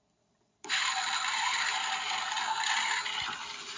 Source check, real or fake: fake